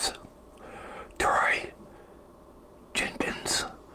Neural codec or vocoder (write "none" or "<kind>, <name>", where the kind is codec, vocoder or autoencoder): none